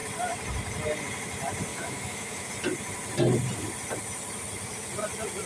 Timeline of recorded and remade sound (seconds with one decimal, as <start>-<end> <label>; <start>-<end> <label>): 0.0-1.7 recorded; 1.7-2.5 remade; 2.5-5.5 recorded